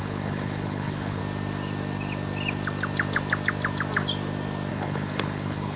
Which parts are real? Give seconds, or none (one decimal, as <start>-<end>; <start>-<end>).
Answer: 1.2-4.7